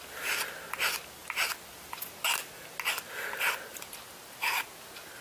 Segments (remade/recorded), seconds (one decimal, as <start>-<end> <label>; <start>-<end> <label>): 0.0-5.2 recorded